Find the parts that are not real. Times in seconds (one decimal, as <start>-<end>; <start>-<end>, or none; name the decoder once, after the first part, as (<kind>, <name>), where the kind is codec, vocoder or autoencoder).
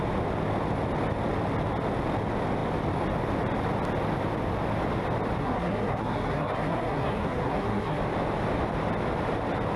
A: 5.4-8.0 (codec, SNAC)